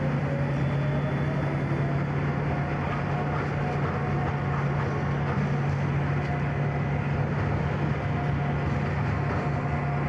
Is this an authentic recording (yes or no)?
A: yes